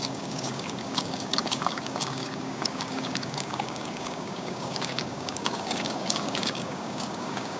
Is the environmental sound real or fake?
fake